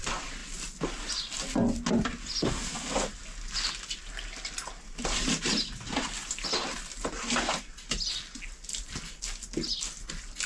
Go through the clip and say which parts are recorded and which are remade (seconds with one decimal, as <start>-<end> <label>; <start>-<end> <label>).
0.0-10.5 recorded